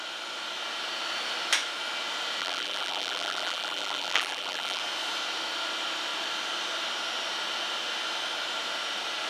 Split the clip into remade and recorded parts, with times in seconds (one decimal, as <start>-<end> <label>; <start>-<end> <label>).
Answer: 0.0-2.4 recorded; 2.4-4.8 remade; 4.8-9.3 recorded